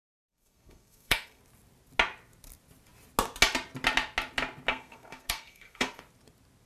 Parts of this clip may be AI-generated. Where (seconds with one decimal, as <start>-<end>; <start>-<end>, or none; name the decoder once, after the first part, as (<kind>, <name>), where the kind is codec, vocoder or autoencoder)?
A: 0.0-1.4 (codec, SNAC); 4.7-6.0